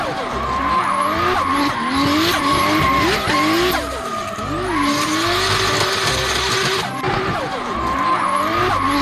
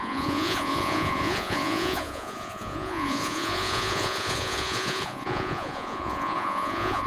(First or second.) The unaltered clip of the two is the first